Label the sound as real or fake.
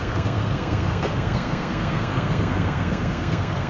fake